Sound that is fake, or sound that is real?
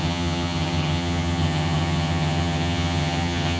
fake